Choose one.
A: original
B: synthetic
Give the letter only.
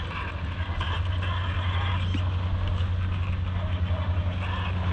A